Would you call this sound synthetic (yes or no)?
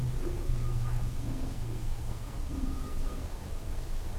yes